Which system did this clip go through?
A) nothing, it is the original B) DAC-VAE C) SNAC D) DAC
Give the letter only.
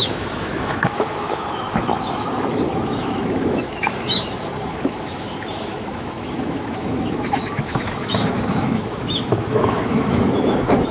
B